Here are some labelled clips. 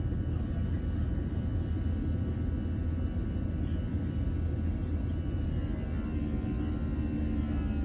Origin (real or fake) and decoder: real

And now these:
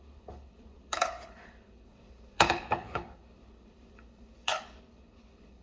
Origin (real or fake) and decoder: fake, codec, HILCodec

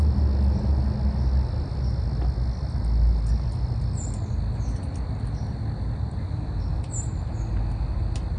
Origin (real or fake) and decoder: real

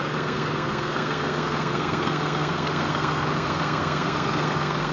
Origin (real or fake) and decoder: fake, codec, SNAC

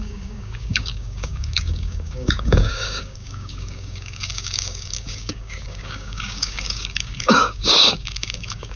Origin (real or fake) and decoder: fake, codec, DAC